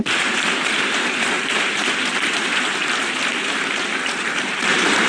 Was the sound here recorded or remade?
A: remade